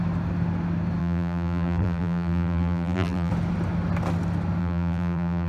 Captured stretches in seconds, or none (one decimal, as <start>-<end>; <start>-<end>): 0.0-1.0; 3.3-4.6